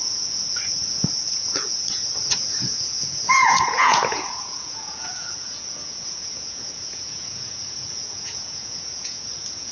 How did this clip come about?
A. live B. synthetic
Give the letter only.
B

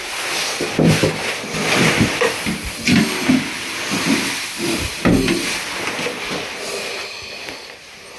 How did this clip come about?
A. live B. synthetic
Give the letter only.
B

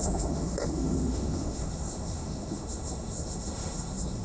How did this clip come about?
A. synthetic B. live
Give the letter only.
A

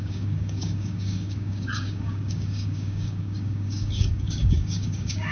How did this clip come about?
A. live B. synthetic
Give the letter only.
B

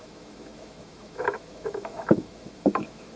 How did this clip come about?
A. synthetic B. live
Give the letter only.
A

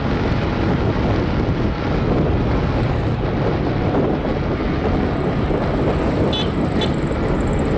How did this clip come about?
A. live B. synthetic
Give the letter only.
A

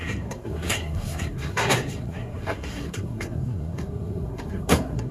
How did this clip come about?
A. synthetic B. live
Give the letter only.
A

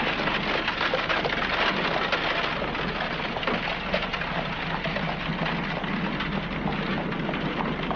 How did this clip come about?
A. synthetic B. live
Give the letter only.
B